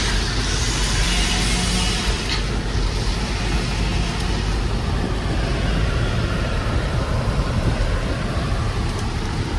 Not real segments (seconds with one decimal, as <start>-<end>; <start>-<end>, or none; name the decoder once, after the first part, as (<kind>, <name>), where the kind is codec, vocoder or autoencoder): none